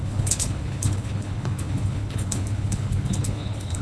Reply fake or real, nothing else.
fake